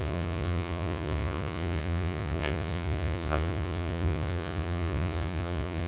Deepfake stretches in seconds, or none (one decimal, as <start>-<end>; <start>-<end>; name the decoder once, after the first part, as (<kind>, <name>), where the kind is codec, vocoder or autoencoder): 0.0-5.9 (vocoder, Vocos)